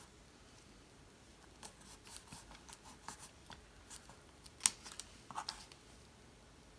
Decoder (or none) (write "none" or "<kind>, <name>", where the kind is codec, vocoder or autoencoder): none